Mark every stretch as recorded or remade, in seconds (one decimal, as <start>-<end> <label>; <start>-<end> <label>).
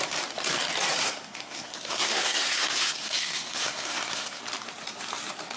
0.0-1.0 recorded; 1.0-4.4 remade; 4.4-5.6 recorded